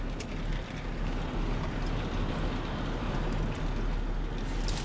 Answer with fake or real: real